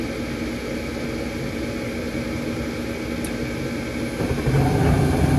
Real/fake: real